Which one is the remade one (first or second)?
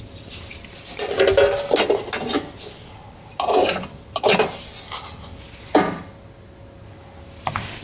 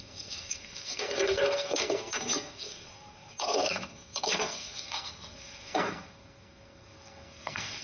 second